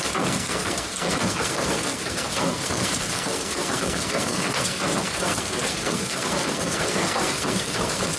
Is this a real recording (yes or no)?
no